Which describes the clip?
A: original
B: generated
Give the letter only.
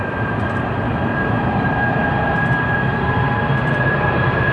B